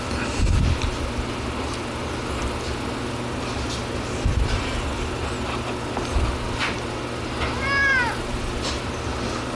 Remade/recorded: recorded